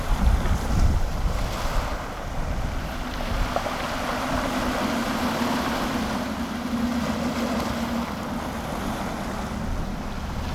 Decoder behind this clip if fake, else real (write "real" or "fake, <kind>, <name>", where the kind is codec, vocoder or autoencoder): real